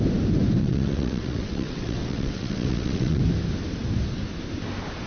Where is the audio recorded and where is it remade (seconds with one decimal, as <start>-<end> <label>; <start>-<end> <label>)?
0.0-0.6 recorded; 0.6-3.2 remade; 3.2-5.1 recorded